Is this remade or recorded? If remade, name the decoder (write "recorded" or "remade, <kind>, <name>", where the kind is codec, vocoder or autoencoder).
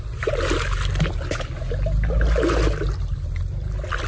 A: recorded